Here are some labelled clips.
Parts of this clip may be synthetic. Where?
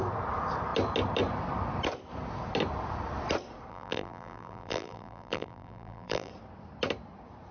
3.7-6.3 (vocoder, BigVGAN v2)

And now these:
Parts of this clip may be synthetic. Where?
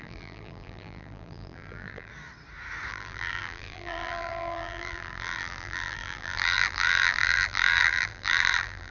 0.0-2.1 (vocoder, BigVGAN v2); 2.9-8.9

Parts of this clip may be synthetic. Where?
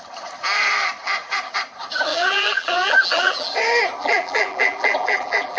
2.1-3.5 (vocoder, BigVGAN v2); 4.0-5.6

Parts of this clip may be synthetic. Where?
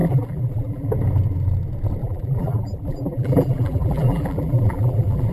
0.0-0.9 (vocoder, BigVGAN v2); 2.0-5.3